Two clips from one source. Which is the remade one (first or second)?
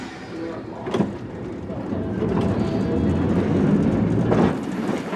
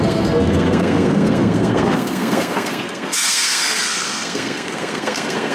second